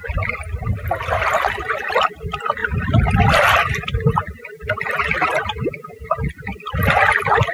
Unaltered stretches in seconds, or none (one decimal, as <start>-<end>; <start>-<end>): 0.0-7.5